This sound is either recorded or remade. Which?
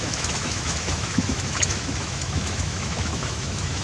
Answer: remade